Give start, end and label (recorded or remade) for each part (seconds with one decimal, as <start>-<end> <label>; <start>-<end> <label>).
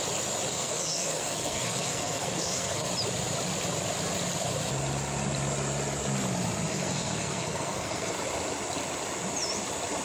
0.0-0.5 recorded; 0.5-2.9 remade; 2.9-6.7 recorded; 6.7-8.1 remade; 8.1-10.0 recorded